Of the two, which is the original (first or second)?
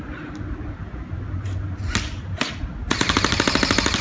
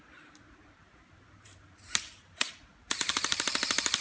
first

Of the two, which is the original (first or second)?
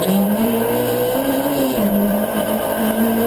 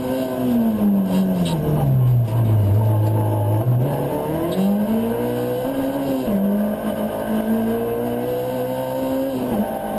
second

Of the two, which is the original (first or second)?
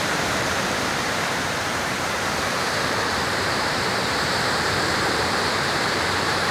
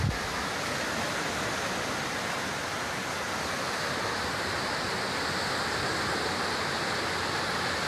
second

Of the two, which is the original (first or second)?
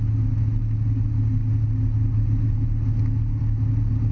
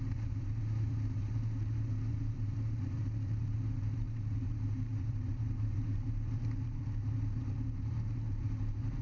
first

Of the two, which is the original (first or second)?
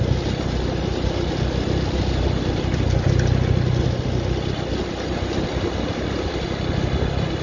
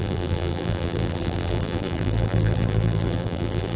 first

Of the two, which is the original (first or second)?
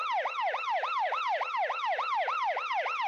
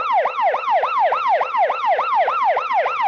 second